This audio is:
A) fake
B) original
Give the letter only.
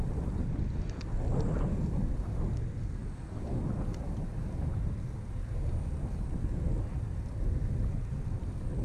B